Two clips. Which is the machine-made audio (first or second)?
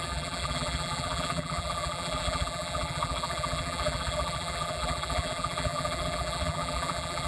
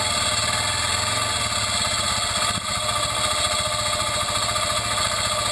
first